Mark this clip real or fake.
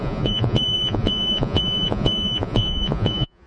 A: fake